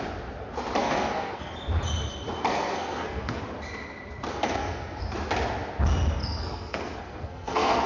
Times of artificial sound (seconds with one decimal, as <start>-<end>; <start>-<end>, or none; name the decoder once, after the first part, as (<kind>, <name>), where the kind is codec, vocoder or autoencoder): 0.8-1.5 (codec, SNAC); 2.5-3.4; 4.3-5.0; 6.2-7.9